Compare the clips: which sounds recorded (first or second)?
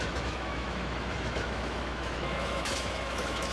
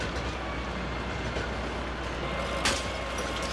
second